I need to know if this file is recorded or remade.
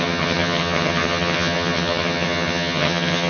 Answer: remade